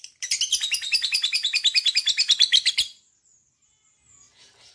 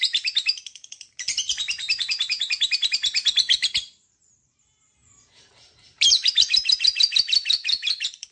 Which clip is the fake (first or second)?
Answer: second